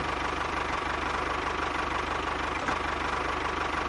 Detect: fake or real fake